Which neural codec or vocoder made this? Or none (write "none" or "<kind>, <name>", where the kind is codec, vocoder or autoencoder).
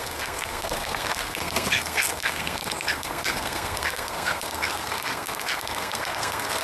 codec, SNAC